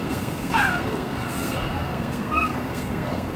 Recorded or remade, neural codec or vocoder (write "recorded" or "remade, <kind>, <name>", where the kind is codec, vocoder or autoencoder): remade, codec, SNAC